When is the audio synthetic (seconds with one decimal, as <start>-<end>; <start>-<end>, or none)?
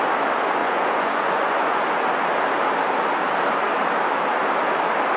0.6-1.8